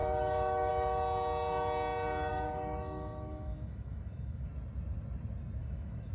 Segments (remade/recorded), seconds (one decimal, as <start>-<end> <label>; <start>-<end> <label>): 0.0-0.7 remade; 0.7-2.3 recorded; 2.3-4.5 remade; 4.5-5.6 recorded; 5.6-6.1 remade